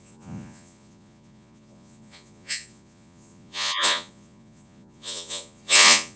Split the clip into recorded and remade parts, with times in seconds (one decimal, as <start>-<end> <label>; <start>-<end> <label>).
0.0-6.2 remade